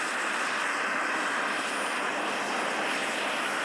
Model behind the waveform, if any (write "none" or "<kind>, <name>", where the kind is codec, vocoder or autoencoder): none